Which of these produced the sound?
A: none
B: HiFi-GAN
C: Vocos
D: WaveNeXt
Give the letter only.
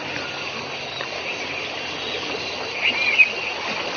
A